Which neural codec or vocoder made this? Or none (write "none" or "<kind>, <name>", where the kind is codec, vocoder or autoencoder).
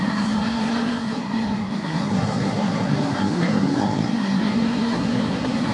codec, SNAC